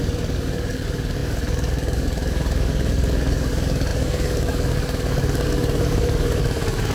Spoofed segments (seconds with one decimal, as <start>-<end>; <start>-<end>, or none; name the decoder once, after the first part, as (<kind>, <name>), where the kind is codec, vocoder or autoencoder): 0.0-6.9 (codec, DAC)

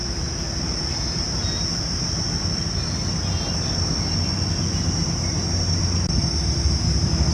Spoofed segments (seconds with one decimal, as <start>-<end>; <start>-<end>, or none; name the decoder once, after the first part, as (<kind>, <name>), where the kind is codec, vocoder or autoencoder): 0.0-1.6 (vocoder, BigVGAN v2)

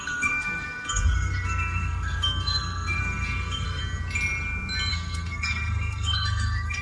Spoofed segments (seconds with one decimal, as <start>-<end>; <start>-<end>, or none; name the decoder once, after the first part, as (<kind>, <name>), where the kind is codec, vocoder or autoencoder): 0.0-3.8 (codec, SNAC); 4.9-6.8